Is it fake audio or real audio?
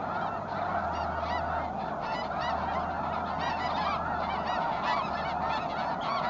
real